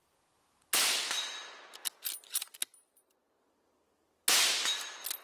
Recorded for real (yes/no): yes